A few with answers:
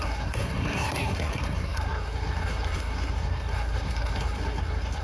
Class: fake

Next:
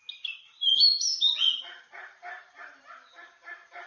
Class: real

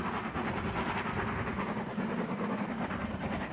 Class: real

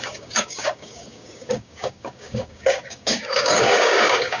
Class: fake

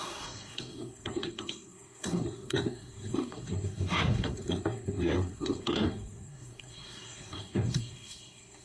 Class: fake